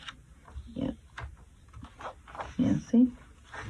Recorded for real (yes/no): yes